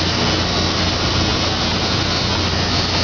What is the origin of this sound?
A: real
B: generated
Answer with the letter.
A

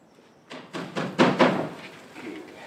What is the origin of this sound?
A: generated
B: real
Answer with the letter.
B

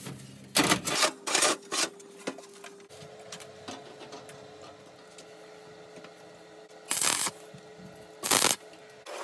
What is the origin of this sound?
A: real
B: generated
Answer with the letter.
A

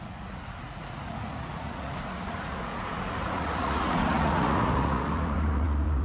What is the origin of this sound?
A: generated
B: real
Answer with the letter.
A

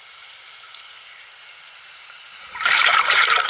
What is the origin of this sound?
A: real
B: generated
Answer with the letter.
B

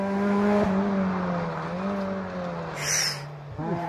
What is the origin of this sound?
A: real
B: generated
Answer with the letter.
A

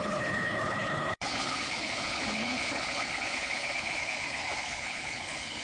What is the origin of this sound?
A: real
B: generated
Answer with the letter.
B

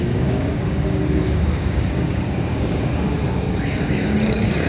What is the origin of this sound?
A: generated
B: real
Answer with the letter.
A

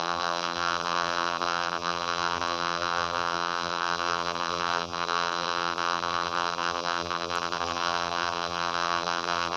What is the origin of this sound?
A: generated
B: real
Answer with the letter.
A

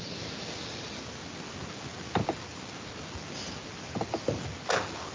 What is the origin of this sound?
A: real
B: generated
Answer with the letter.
A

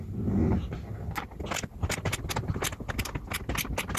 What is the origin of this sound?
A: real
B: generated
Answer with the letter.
A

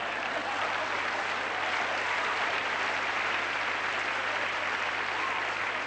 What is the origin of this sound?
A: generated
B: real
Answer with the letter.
B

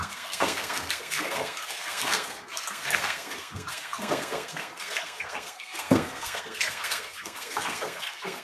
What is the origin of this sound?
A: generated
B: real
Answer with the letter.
A